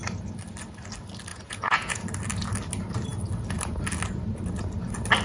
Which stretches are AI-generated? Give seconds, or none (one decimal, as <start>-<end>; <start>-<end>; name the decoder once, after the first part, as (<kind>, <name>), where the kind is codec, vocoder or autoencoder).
1.3-2.0 (vocoder, Vocos)